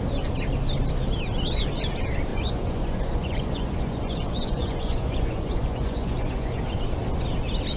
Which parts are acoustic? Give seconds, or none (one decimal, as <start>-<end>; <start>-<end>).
0.0-2.3; 6.6-7.8